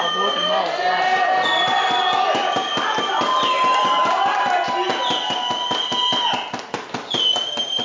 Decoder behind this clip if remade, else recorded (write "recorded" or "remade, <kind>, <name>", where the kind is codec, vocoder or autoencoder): recorded